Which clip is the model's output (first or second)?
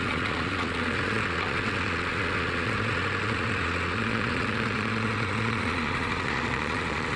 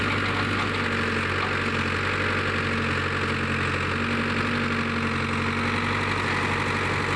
first